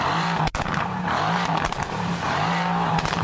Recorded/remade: remade